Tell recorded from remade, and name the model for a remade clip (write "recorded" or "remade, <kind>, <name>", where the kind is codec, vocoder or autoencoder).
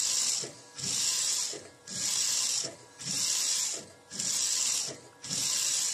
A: recorded